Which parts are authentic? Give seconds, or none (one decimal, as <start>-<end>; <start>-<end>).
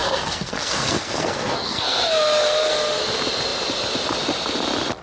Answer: 3.0-5.0